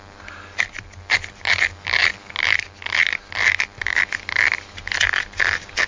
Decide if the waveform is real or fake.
real